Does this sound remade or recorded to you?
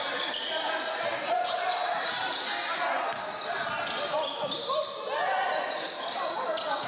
recorded